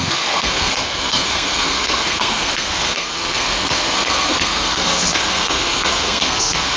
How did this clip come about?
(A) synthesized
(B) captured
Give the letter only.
A